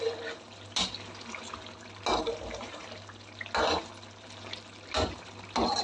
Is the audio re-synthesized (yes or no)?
no